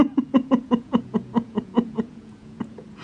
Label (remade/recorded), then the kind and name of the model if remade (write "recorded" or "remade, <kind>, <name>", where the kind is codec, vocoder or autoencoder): remade, vocoder, Vocos